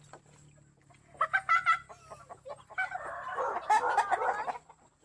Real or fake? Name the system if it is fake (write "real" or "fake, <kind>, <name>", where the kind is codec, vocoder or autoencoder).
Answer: real